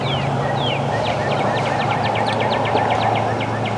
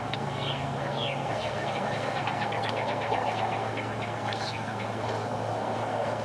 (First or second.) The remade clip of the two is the second